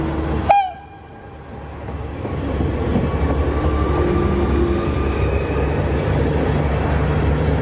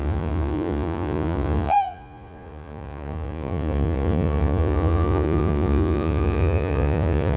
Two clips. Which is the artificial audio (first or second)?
second